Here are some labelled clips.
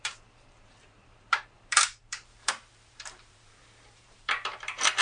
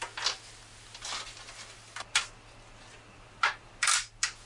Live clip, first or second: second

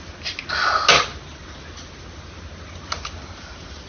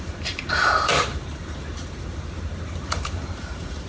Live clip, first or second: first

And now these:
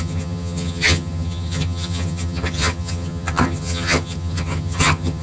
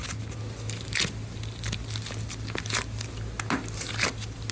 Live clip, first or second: second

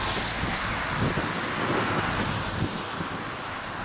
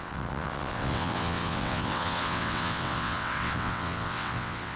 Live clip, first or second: first